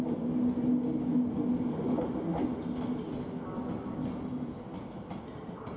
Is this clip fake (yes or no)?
no